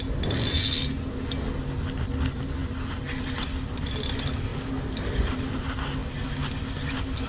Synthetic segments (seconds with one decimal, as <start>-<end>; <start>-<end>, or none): none